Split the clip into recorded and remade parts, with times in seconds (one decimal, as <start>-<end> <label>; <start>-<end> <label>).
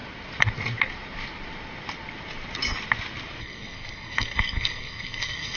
0.0-3.4 recorded; 3.4-5.6 remade